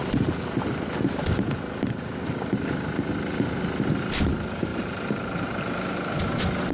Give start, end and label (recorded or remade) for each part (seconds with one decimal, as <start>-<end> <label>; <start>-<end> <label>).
0.0-4.7 recorded; 4.7-6.2 remade; 6.2-6.7 recorded